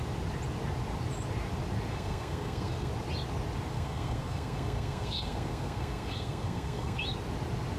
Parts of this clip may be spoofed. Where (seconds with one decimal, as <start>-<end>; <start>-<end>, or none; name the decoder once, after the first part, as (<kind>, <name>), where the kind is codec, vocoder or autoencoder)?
1.9-2.9 (codec, SNAC); 3.7-7.0